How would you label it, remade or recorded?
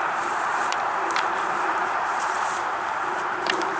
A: remade